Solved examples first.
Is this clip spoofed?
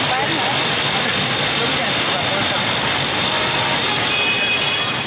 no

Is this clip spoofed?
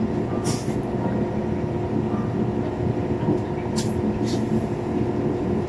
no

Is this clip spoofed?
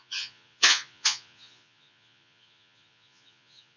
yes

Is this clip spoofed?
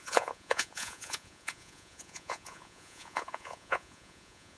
yes